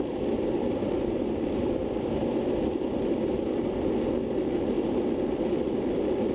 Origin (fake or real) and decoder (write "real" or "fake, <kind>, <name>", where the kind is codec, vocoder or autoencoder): real